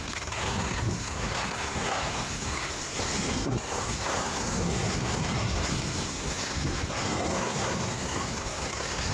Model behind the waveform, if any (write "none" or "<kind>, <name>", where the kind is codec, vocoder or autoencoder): codec, SNAC